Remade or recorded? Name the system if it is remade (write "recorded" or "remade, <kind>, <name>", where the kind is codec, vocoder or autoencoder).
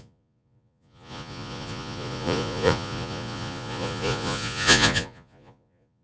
remade, vocoder, Vocos